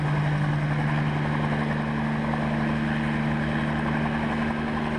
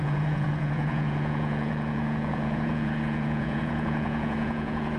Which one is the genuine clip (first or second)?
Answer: first